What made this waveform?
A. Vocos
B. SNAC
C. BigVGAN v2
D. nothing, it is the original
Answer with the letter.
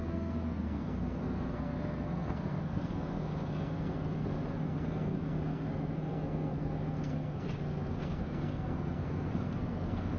B